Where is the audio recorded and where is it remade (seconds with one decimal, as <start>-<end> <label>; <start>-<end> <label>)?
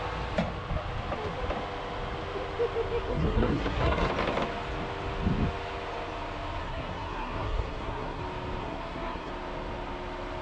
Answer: 0.0-3.1 recorded; 3.1-4.1 remade; 4.1-6.6 recorded; 6.6-8.2 remade; 8.2-8.6 recorded; 8.6-9.3 remade; 9.3-10.4 recorded